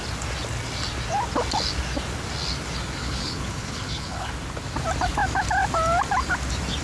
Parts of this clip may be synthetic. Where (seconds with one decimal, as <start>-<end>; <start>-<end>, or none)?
3.0-4.3